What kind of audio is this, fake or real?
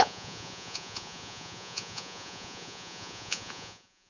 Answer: fake